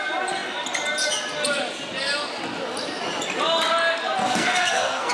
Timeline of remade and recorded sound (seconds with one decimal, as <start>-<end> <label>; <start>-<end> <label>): 0.0-4.2 recorded; 4.2-5.1 remade